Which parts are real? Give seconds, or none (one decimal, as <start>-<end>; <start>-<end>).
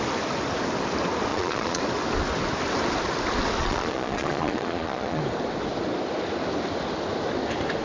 0.0-1.3; 1.8-3.6; 5.2-7.8